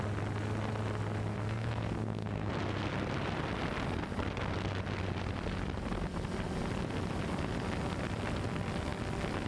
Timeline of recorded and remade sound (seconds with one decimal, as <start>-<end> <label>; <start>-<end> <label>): 0.0-1.3 recorded; 1.3-2.5 remade; 2.5-9.5 recorded